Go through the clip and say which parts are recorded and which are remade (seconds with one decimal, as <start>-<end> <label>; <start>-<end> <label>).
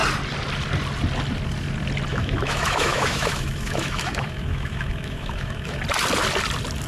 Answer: 0.0-2.1 recorded; 2.1-5.8 remade; 5.8-6.9 recorded